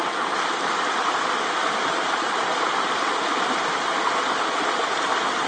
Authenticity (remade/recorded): recorded